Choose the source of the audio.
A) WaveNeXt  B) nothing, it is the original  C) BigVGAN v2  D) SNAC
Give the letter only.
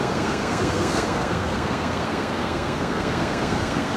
D